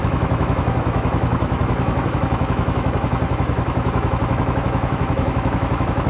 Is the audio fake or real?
fake